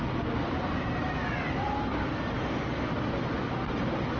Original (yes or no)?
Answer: yes